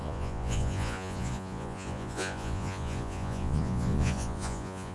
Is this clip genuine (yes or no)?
no